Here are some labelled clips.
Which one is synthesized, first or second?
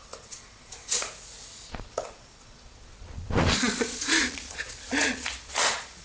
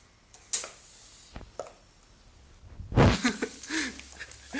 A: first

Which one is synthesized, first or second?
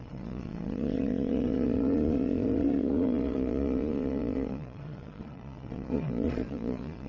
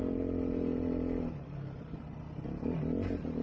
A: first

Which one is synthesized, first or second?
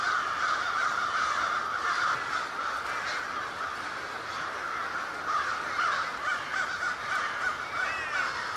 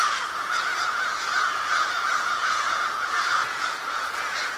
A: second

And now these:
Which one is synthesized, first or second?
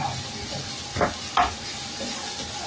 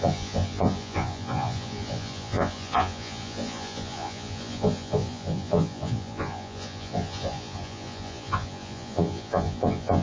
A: second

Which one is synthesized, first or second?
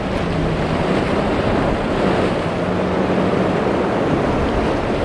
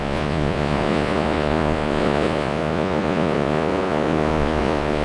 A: second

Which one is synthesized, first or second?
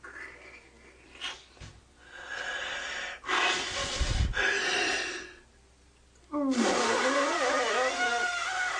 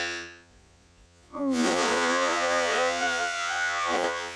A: second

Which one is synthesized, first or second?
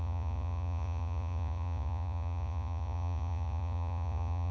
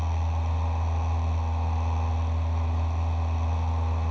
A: first